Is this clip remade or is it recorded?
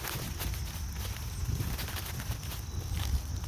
recorded